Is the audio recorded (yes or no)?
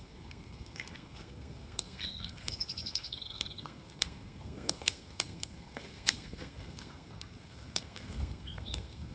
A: no